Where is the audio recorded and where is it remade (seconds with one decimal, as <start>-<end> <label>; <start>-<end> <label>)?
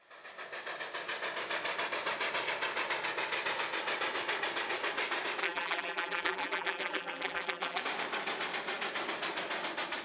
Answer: 0.0-5.4 recorded; 5.4-7.8 remade; 7.8-10.0 recorded